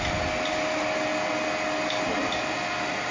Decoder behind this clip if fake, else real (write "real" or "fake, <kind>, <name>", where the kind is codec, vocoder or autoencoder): real